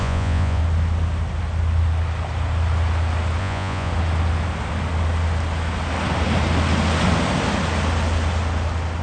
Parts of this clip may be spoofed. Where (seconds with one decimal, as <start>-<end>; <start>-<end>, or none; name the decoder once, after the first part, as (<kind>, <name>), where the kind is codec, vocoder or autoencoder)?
0.0-0.6 (vocoder, Vocos); 3.4-3.9